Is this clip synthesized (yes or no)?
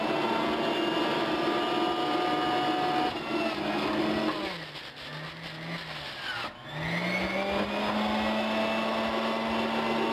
no